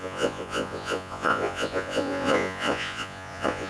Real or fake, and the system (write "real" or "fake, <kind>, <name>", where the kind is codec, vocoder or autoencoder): fake, vocoder, Vocos